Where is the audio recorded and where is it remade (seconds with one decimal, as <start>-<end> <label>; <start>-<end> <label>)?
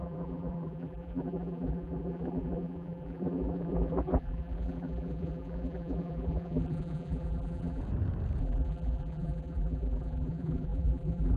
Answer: 0.0-7.8 remade; 7.8-8.4 recorded; 8.4-11.4 remade